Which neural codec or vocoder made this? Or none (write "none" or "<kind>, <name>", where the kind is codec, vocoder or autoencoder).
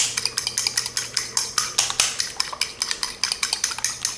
none